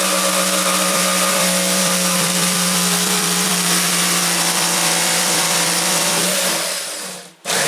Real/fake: fake